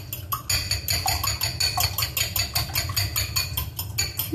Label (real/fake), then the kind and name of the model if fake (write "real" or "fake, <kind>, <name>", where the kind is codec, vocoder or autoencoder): real